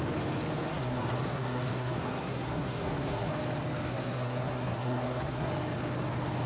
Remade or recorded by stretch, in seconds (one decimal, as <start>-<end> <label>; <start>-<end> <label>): 0.0-0.7 recorded; 0.7-3.3 remade; 3.3-3.9 recorded; 3.9-5.5 remade; 5.5-6.5 recorded